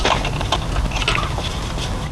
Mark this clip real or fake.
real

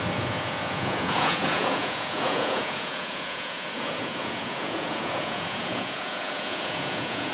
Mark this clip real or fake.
fake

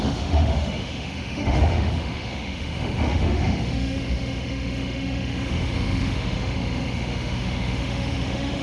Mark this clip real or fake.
fake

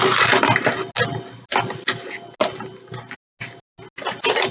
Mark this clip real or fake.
real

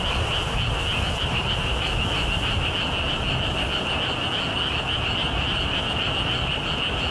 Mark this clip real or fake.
real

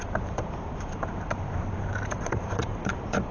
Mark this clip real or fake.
fake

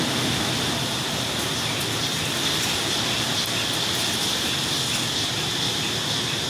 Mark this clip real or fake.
real